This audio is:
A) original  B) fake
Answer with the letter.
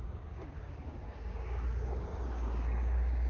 B